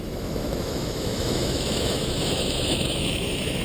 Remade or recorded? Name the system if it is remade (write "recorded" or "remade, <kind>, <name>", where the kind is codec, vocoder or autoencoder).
remade, autoencoder, DAC-VAE